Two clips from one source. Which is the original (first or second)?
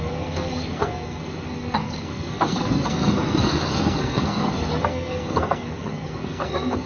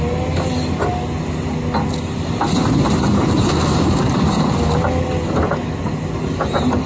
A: second